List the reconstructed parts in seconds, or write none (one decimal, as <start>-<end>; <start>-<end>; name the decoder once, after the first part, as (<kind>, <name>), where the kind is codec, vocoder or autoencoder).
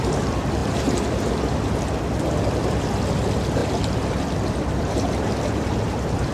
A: 0.6-1.3 (vocoder, BigVGAN v2)